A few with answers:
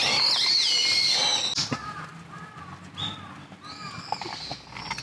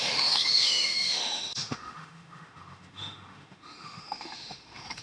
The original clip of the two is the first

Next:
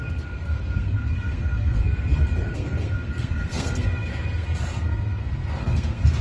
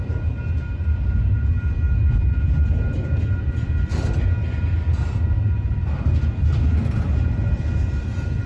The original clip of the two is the second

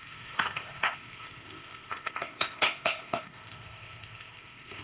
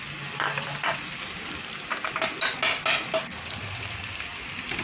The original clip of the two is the second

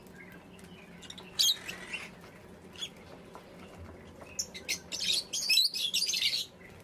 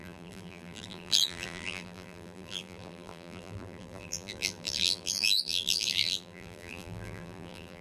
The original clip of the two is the first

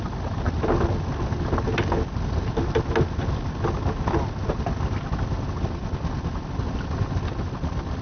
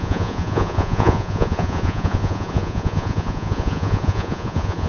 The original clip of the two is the first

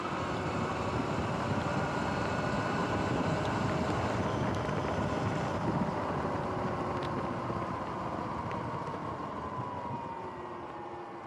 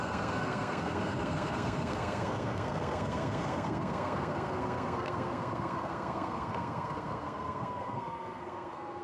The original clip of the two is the first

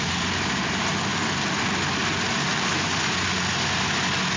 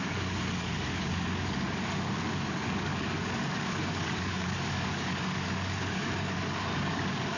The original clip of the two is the first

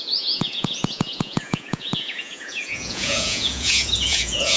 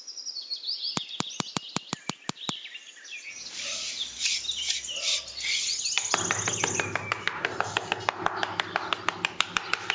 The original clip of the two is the second